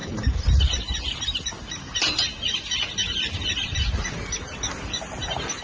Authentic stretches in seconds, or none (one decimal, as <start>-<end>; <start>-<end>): 0.0-5.6